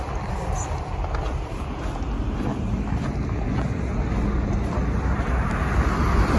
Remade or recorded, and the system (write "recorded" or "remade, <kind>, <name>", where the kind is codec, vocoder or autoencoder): recorded